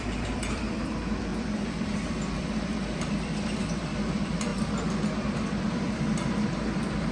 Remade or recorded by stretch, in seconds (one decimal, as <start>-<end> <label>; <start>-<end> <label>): 0.0-4.5 remade; 4.5-5.3 recorded; 5.3-7.1 remade